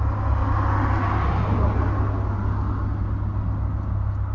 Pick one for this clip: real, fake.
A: real